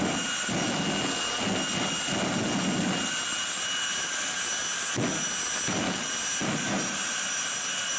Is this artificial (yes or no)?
no